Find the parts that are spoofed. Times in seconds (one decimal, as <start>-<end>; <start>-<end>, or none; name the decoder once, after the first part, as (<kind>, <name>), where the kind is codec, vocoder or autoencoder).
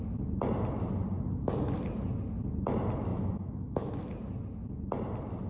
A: 3.1-3.9 (autoencoder, DAC-VAE)